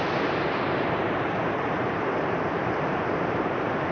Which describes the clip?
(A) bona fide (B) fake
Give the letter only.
B